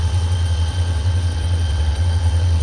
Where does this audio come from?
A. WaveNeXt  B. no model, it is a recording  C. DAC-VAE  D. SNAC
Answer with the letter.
A